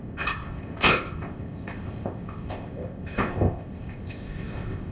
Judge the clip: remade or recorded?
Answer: remade